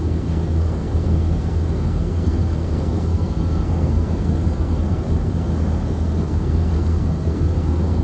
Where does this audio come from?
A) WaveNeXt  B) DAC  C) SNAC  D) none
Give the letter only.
C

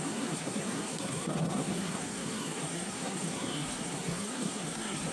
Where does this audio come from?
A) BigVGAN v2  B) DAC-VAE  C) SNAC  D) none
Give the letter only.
C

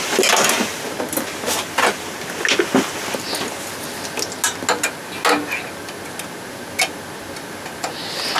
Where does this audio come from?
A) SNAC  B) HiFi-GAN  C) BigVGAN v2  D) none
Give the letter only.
D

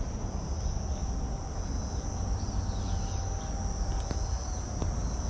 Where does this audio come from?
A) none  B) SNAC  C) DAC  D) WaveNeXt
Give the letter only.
A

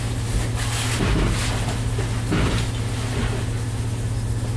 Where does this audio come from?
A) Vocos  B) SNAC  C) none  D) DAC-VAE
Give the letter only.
C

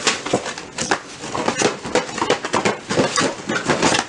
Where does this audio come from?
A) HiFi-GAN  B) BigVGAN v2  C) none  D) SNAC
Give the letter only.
C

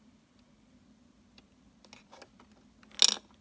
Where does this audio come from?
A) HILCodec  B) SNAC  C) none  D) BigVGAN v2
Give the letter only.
C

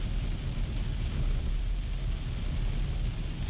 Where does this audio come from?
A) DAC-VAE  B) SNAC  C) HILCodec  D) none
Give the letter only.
D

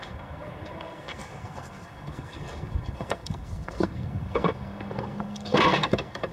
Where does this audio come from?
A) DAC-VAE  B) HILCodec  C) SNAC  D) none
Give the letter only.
C